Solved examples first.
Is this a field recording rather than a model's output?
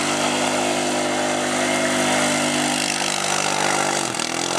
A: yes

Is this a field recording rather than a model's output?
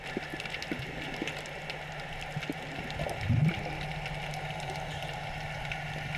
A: yes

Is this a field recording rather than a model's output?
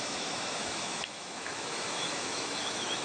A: no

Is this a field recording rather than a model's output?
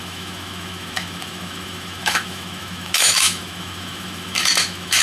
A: no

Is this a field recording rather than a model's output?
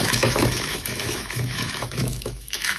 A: no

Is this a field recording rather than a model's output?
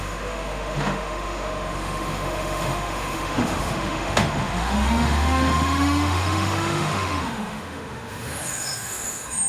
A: no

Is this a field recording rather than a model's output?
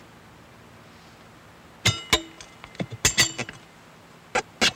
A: yes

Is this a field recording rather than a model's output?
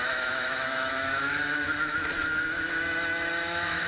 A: no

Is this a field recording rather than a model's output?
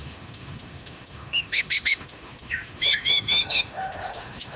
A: no